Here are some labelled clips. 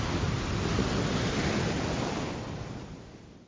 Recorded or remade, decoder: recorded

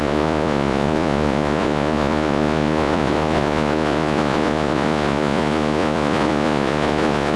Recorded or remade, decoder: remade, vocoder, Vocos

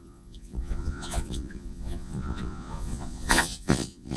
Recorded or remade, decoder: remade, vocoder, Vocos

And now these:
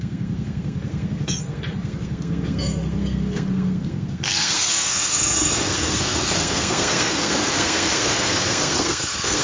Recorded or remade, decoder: remade, codec, SNAC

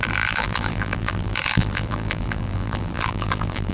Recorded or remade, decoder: remade, vocoder, BigVGAN v2